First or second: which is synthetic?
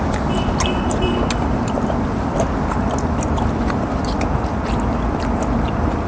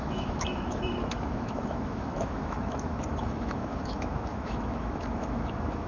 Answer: second